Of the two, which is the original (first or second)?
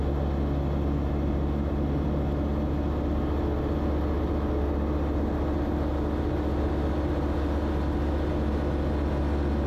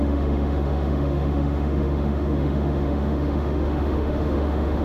first